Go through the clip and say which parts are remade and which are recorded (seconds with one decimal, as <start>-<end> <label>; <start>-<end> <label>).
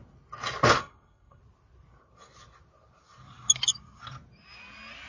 0.0-0.8 recorded; 0.8-1.4 remade; 1.4-5.1 recorded